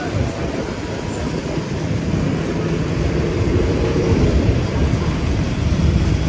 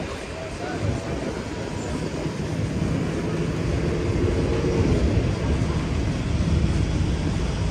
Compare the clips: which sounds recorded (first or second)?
second